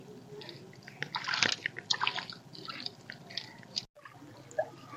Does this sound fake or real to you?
real